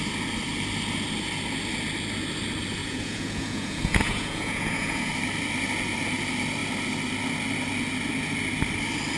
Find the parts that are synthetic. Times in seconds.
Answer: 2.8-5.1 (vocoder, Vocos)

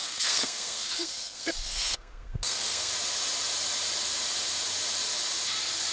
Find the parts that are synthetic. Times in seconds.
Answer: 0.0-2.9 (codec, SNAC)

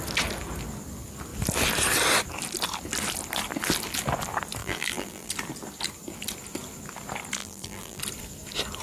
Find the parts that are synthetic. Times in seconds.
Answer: 4.6-5.3 (vocoder, BigVGAN v2); 7.4-8.0